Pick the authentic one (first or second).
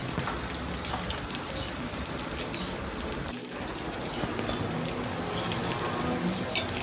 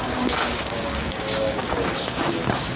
first